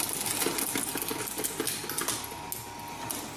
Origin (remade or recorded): recorded